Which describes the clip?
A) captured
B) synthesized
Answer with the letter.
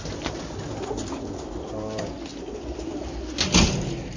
A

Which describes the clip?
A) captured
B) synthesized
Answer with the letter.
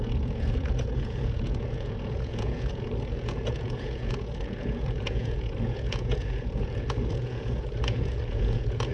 B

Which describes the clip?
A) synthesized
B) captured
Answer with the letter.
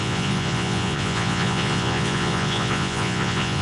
A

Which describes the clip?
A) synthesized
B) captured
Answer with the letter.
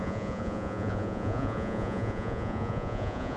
A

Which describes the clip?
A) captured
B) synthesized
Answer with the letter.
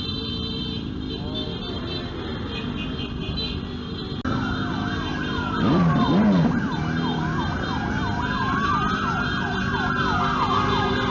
A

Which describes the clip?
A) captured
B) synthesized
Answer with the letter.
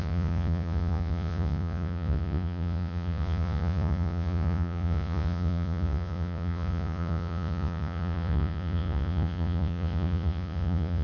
B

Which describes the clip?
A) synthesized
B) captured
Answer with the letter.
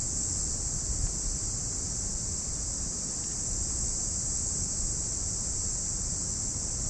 B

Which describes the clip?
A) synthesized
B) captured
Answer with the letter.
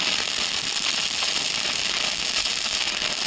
B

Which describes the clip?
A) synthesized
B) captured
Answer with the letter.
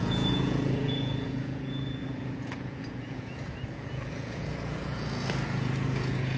A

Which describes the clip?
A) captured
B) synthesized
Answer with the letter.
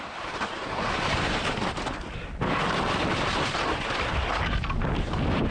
A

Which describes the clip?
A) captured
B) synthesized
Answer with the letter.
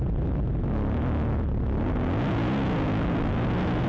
A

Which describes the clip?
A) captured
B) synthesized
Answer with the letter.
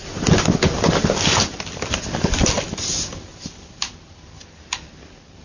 A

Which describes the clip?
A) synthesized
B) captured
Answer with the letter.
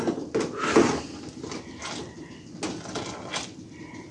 B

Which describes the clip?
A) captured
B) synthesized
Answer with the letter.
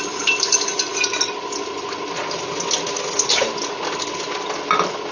A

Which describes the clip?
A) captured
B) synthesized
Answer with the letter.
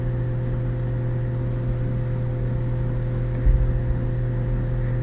A